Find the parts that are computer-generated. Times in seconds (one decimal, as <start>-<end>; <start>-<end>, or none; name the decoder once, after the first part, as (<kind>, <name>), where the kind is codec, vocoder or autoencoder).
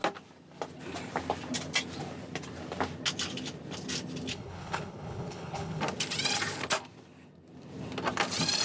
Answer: 4.3-5.8 (codec, HILCodec)